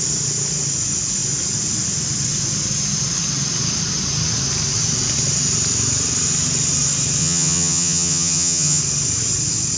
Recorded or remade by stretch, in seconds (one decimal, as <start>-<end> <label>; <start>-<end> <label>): 0.0-7.2 recorded; 7.2-8.8 remade; 8.8-9.8 recorded